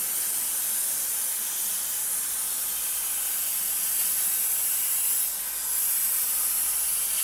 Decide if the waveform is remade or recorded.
recorded